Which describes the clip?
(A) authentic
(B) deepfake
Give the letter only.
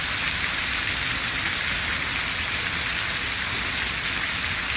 A